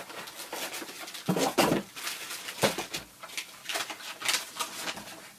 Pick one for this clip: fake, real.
real